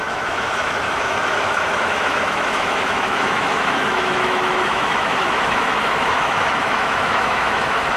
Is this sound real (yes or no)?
no